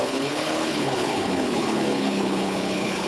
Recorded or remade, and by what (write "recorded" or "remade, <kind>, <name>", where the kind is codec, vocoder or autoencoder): remade, codec, HILCodec